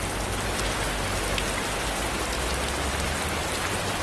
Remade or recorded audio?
recorded